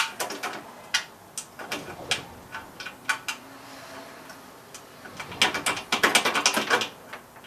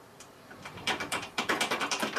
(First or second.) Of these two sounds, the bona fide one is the first